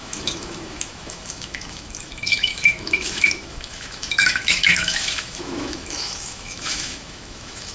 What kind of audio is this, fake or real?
fake